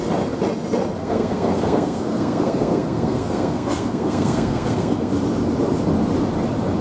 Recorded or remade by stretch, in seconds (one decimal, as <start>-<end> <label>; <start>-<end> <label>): 0.0-1.0 recorded; 1.0-5.1 remade; 5.1-6.8 recorded